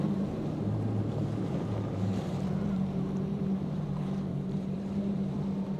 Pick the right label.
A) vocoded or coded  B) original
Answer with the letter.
A